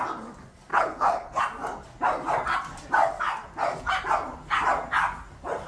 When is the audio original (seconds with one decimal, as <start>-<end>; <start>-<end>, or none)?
0.0-0.7; 1.4-5.7